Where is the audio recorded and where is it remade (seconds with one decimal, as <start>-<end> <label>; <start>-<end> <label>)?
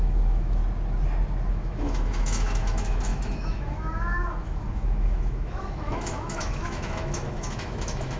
0.0-0.6 remade; 0.6-1.5 recorded; 1.5-8.2 remade